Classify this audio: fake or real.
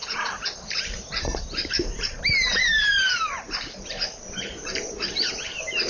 fake